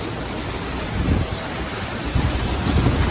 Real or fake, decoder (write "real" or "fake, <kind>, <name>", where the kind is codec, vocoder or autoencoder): real